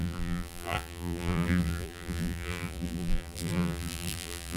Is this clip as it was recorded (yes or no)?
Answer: no